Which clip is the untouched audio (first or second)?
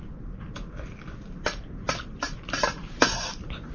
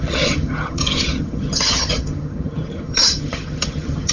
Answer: first